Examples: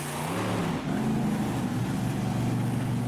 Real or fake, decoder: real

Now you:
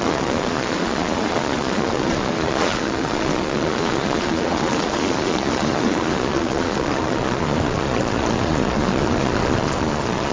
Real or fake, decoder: fake, vocoder, Vocos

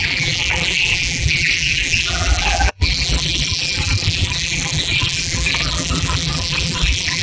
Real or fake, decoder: fake, vocoder, BigVGAN v2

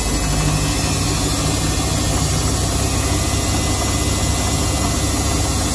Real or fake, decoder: real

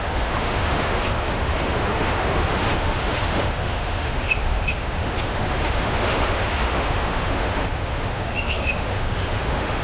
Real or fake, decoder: fake, autoencoder, DAC-VAE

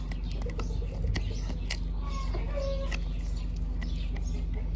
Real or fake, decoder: real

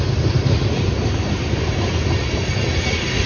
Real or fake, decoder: real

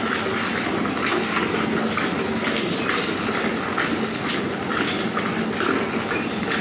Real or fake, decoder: real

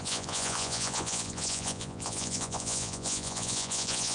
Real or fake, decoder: fake, vocoder, Vocos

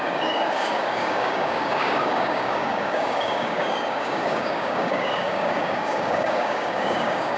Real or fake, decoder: fake, codec, DAC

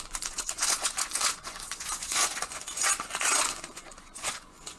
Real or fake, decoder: fake, vocoder, Vocos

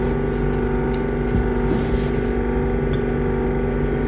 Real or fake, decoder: real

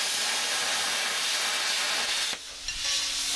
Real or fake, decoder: real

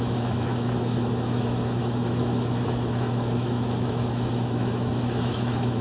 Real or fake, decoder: fake, autoencoder, DAC-VAE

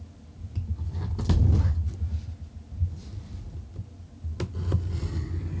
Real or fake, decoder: real